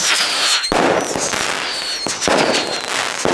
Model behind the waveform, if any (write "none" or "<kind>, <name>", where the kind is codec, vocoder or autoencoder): none